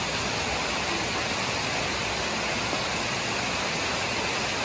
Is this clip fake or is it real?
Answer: real